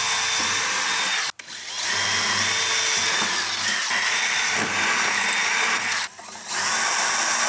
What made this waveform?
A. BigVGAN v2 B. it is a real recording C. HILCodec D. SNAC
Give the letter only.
B